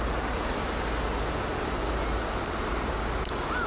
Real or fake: real